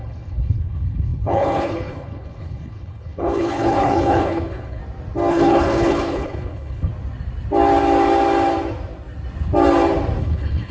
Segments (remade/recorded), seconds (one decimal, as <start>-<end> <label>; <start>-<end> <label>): 0.0-4.8 remade; 4.8-5.3 recorded; 5.3-6.9 remade; 6.9-10.2 recorded; 10.2-10.7 remade